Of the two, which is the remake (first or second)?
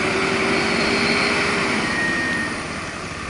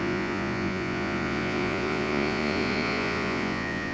second